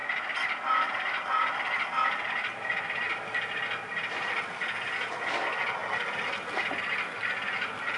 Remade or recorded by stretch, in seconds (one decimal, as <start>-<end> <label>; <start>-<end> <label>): 0.0-3.5 remade; 3.5-5.8 recorded; 5.8-7.3 remade; 7.3-8.0 recorded